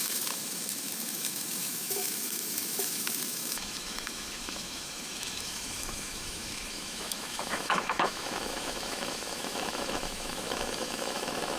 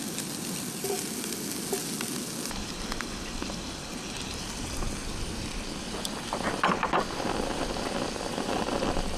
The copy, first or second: first